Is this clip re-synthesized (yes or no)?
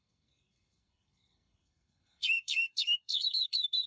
yes